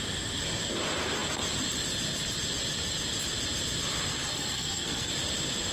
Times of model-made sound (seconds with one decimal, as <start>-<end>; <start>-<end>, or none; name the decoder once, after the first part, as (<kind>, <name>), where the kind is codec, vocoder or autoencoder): 4.1-5.1 (codec, SNAC)